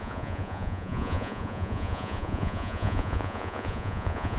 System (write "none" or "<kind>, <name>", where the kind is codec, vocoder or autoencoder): vocoder, Vocos